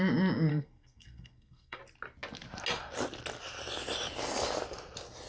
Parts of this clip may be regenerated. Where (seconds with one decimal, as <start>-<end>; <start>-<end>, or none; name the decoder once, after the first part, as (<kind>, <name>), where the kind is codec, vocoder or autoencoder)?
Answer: 0.5-1.8 (codec, SNAC)